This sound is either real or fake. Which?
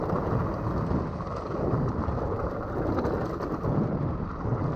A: real